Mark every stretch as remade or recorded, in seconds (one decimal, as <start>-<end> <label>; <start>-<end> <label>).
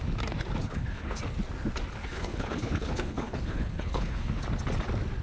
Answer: 0.0-0.6 recorded; 0.6-1.2 remade; 1.2-2.0 recorded; 2.0-4.4 remade; 4.4-5.2 recorded